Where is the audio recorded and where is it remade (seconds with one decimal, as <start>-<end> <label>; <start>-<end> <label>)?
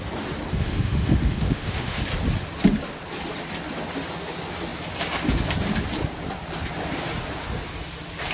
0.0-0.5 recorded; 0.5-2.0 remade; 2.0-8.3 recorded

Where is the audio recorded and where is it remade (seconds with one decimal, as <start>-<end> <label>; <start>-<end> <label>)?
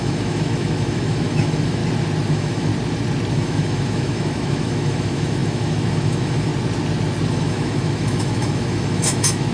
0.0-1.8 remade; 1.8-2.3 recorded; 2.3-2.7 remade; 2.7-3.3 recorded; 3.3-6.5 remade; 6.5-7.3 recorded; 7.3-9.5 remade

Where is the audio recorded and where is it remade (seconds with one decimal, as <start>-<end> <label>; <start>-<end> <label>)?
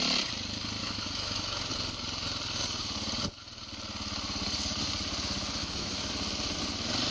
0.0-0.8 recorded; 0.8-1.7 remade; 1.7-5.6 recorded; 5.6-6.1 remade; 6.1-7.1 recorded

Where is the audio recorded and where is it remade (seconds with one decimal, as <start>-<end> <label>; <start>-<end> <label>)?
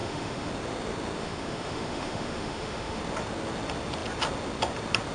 0.0-0.5 remade; 0.5-1.2 recorded; 1.2-3.0 remade; 3.0-5.1 recorded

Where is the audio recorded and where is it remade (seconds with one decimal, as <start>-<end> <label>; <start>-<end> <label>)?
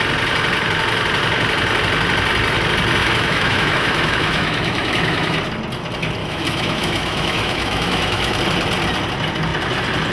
0.0-3.0 recorded; 3.0-5.4 remade; 5.4-6.2 recorded; 6.2-8.4 remade; 8.4-10.1 recorded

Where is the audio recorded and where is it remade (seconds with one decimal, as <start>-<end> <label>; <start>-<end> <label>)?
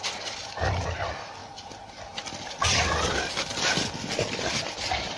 0.0-5.2 recorded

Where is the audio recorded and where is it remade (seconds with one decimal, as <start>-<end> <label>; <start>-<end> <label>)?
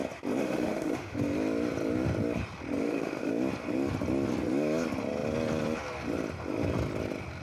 0.0-0.4 recorded; 0.4-1.2 remade; 1.2-2.8 recorded; 2.8-3.3 remade; 3.3-7.4 recorded